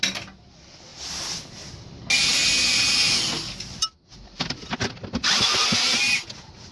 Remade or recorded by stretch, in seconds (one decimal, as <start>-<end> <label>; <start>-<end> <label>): 0.0-6.7 recorded